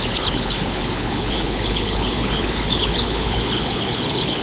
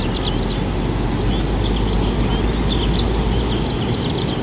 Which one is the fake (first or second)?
first